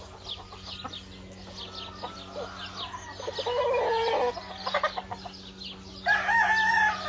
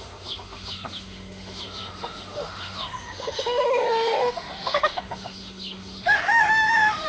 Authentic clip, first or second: first